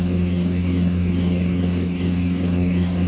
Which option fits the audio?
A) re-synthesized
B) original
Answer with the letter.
A